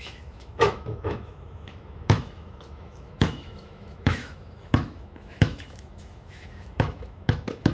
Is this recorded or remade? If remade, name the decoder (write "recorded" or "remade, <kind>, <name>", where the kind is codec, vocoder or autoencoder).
remade, autoencoder, DAC-VAE